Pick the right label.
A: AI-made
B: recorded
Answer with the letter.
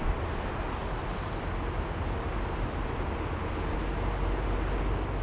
B